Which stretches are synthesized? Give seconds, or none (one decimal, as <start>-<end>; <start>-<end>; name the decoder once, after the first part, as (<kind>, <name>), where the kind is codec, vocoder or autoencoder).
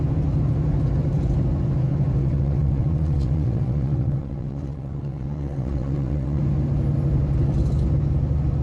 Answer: 2.2-6.4 (vocoder, WaveNeXt)